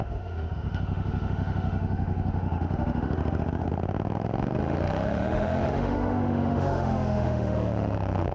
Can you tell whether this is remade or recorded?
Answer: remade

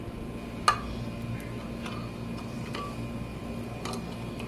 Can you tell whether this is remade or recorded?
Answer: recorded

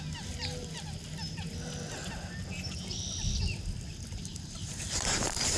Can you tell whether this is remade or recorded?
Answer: recorded